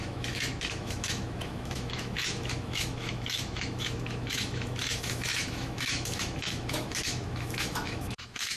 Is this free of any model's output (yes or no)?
no